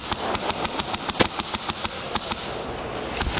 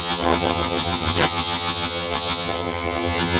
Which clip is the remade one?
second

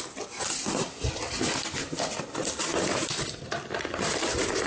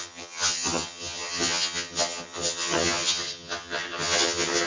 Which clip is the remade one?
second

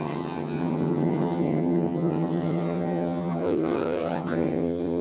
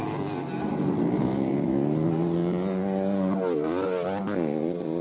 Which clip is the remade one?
first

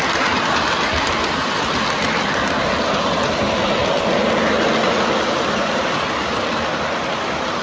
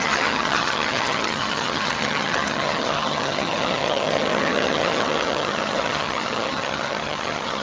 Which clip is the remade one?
second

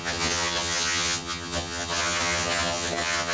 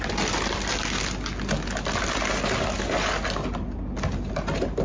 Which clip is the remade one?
first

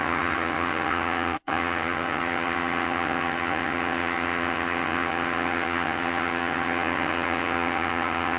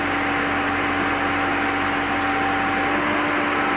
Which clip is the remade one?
first